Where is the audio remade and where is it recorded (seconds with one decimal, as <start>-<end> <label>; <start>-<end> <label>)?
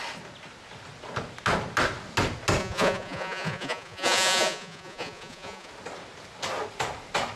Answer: 0.0-2.6 recorded; 2.6-5.7 remade; 5.7-7.4 recorded